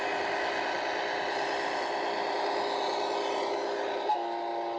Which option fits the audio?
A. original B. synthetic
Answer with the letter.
A